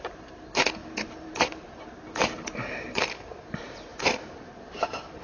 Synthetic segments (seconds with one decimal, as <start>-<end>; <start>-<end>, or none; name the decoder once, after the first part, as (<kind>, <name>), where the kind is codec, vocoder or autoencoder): 0.0-5.2 (vocoder, BigVGAN v2)